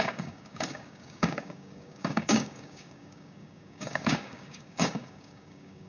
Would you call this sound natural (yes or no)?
no